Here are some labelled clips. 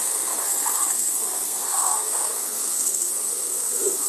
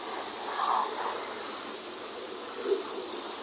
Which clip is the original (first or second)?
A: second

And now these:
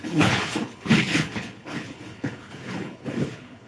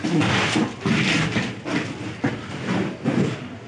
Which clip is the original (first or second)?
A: second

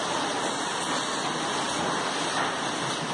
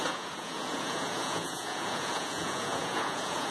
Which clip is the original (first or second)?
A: first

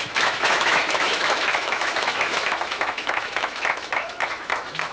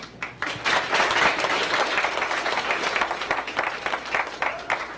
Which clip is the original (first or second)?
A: second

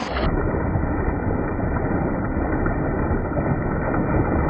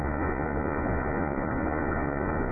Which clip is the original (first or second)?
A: first